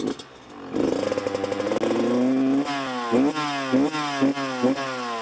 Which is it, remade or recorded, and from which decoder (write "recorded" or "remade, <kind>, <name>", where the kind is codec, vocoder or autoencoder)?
recorded